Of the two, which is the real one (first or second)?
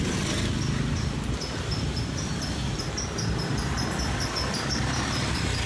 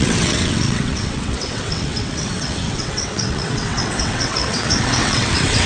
first